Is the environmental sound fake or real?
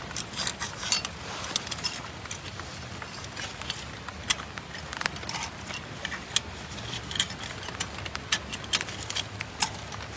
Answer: real